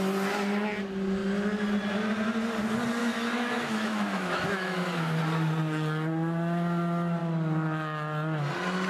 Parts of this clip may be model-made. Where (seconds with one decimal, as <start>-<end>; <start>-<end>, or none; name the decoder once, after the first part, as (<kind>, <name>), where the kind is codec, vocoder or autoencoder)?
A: 3.0-5.2 (autoencoder, DAC-VAE)

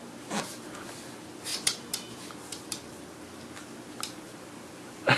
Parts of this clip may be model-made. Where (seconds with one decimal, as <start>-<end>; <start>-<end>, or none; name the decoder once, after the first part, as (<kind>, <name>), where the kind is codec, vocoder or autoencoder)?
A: 1.5-3.4 (vocoder, BigVGAN v2)

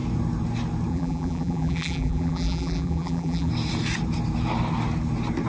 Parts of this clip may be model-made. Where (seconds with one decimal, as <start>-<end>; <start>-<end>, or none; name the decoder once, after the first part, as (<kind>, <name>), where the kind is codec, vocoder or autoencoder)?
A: 0.9-3.5 (vocoder, BigVGAN v2)

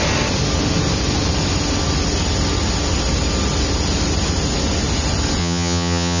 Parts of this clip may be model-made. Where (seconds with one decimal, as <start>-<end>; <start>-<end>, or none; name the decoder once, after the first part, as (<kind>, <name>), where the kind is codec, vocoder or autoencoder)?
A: 5.4-6.2 (vocoder, HiFi-GAN)